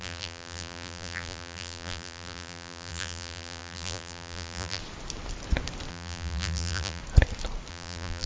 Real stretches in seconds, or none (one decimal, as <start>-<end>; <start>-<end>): 4.8-5.9; 7.0-7.7